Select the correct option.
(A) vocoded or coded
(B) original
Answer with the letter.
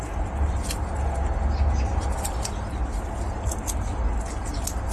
B